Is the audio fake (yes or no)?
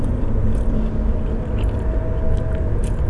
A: no